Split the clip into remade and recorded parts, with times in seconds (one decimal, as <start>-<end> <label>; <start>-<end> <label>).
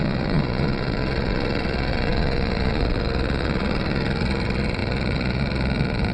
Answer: 0.0-6.1 remade